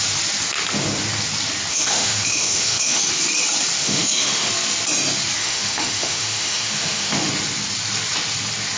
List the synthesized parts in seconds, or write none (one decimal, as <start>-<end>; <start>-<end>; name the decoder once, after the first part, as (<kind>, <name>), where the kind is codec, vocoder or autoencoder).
1.7-3.0 (autoencoder, DAC-VAE); 3.8-4.5; 5.4-7.3